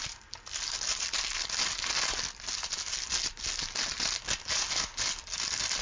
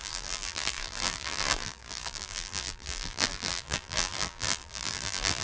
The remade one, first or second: second